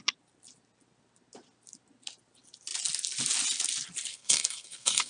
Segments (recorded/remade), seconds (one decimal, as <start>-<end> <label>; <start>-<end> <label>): 0.0-4.1 recorded; 4.1-5.1 remade